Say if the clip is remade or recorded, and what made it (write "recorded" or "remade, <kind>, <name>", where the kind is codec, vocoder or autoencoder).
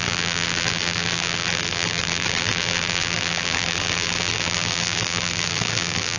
remade, vocoder, BigVGAN v2